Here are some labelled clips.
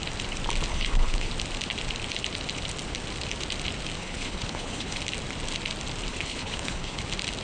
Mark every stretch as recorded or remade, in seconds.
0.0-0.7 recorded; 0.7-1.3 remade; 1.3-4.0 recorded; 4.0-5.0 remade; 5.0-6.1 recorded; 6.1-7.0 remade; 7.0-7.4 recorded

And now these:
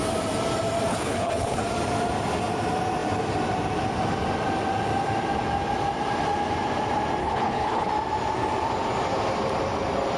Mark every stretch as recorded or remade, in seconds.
0.0-0.9 recorded; 0.9-1.6 remade; 1.6-7.2 recorded; 7.2-7.9 remade; 7.9-10.2 recorded

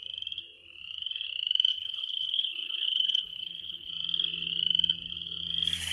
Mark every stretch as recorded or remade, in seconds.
0.0-1.7 recorded; 1.7-3.9 remade; 3.9-5.9 recorded

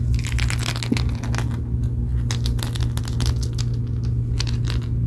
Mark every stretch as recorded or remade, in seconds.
0.0-5.1 recorded